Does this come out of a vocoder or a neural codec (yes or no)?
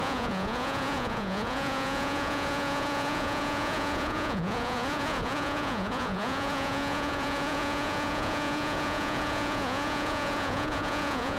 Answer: yes